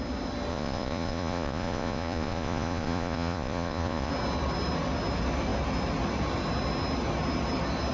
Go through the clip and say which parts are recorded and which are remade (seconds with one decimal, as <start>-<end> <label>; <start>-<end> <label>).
0.0-0.5 recorded; 0.5-4.1 remade; 4.1-7.9 recorded